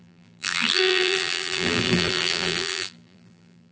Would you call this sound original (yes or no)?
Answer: no